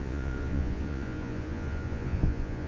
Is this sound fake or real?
fake